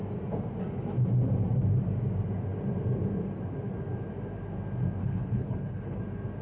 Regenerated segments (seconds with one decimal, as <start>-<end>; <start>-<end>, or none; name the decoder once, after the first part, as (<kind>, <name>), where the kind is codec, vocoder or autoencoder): 5.0-6.0 (codec, HILCodec)